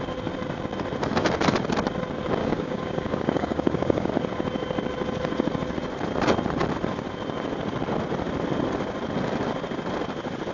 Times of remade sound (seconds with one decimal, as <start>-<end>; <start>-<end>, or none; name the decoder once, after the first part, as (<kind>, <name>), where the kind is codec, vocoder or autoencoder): 2.4-4.1 (codec, DAC)